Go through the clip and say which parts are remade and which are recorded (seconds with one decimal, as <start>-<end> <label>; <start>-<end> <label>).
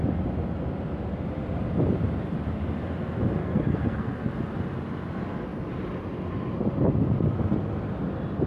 0.0-3.4 recorded; 3.4-4.3 remade; 4.3-8.5 recorded